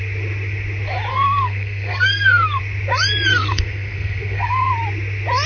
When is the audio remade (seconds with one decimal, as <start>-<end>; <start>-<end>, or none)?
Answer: 1.1-2.6; 3.3-4.7